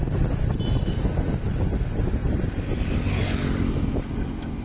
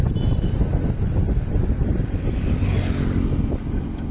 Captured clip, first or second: first